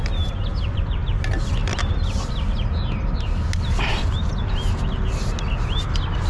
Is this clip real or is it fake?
real